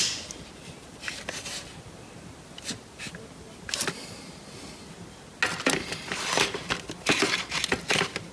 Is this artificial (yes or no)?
no